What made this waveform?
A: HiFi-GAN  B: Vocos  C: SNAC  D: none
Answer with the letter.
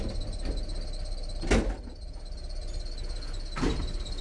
D